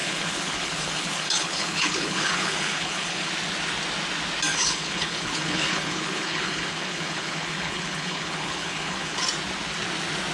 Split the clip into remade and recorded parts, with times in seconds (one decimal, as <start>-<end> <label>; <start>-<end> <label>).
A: 0.0-3.3 remade; 3.3-4.5 recorded; 4.5-9.2 remade; 9.2-10.3 recorded